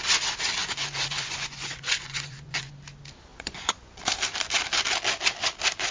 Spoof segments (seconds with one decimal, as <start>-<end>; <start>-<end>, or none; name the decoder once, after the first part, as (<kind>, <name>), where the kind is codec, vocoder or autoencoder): 0.6-2.7 (vocoder, Vocos); 3.3-4.0